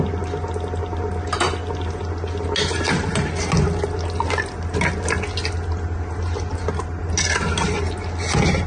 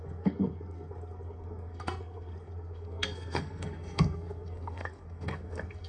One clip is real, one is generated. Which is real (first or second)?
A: first